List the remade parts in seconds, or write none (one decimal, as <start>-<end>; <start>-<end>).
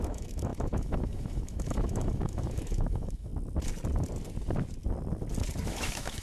0.0-3.3; 5.7-6.2